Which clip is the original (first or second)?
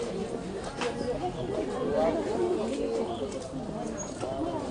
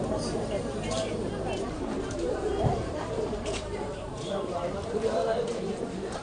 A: first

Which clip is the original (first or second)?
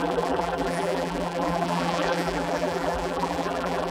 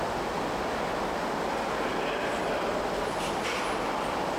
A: second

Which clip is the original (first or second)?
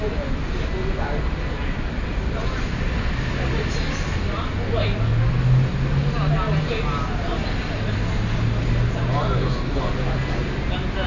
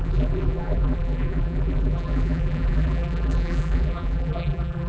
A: first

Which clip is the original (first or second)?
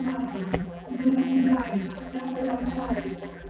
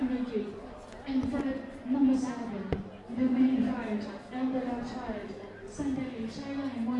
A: second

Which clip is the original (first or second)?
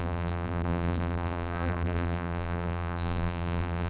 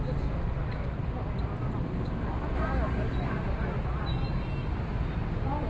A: second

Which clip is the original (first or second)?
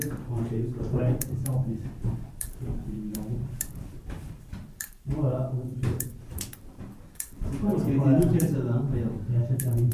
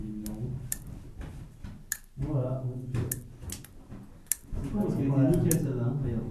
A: second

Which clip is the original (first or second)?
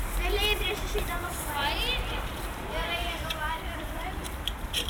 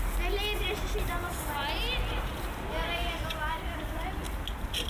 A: second